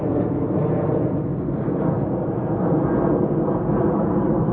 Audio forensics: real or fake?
real